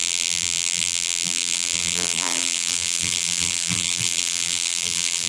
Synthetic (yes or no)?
yes